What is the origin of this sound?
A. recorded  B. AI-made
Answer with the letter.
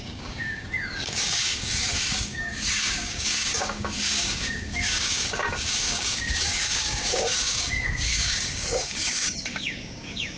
B